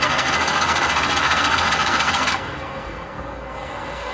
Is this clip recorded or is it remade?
remade